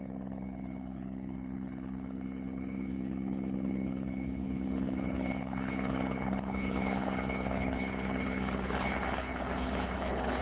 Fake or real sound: fake